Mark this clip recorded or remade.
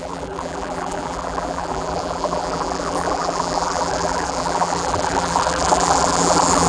remade